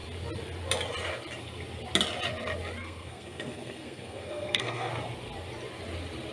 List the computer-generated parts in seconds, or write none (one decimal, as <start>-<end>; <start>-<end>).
2.8-4.9